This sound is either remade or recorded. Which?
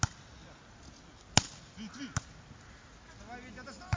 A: recorded